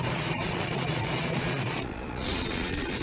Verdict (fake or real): fake